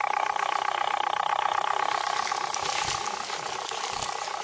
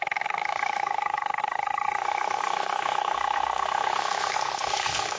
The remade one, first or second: second